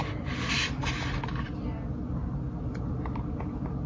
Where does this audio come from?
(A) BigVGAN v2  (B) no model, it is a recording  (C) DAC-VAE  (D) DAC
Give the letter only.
B